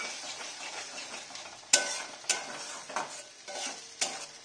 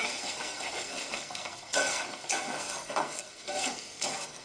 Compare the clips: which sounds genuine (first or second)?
first